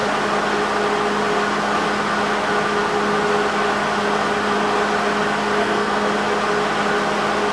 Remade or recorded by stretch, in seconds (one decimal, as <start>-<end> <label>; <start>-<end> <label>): 0.0-5.6 recorded; 5.6-6.1 remade; 6.1-7.5 recorded